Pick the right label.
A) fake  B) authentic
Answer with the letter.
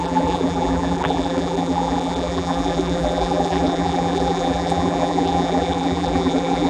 A